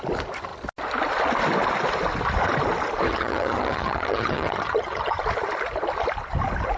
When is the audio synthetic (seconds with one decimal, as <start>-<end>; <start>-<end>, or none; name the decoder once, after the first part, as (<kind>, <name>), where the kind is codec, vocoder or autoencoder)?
3.1-5.2 (vocoder, HiFi-GAN)